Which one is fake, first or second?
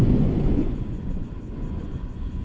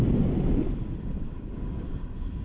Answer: first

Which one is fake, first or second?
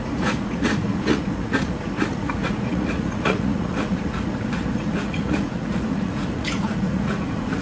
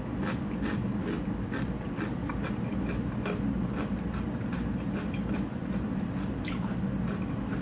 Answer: first